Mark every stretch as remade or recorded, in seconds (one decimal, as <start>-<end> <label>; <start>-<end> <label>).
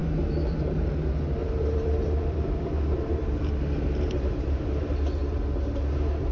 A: 0.0-0.9 remade; 0.9-1.4 recorded; 1.4-4.7 remade; 4.7-6.3 recorded